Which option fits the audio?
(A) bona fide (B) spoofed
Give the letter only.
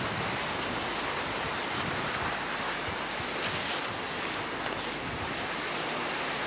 A